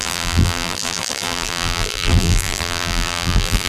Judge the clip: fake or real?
fake